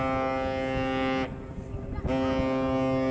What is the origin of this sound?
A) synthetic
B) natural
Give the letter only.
B